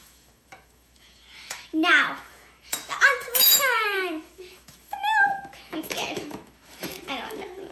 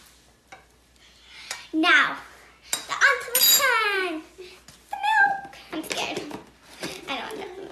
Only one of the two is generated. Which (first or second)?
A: first